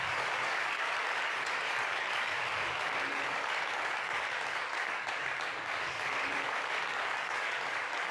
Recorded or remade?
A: remade